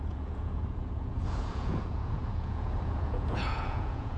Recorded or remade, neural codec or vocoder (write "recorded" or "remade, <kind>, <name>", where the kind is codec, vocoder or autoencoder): remade, vocoder, Vocos